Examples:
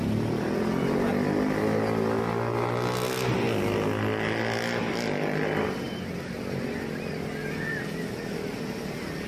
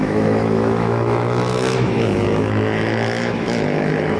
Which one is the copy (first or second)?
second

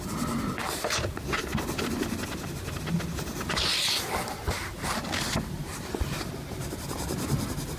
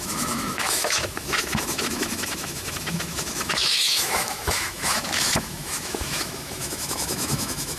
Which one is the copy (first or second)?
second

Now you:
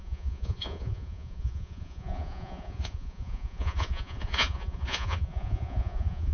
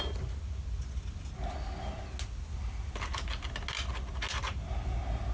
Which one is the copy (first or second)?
first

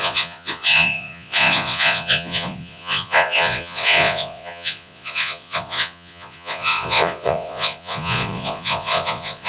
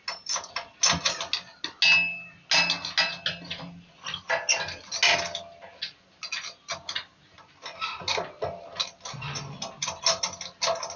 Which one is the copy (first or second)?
first